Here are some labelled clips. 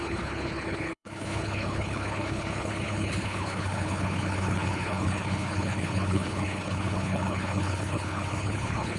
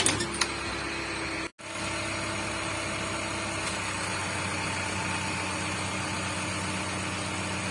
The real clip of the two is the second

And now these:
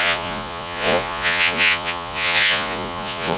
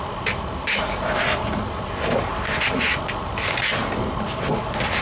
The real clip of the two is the second